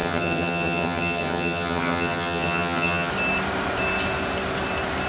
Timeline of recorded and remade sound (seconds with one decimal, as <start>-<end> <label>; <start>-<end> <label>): 0.0-3.1 remade; 3.1-5.1 recorded